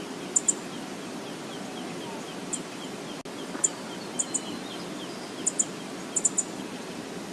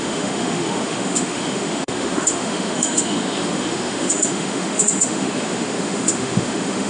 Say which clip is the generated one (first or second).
second